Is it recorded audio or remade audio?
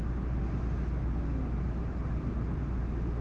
recorded